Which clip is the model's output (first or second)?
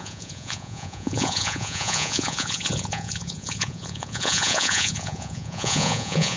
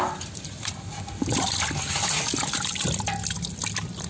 first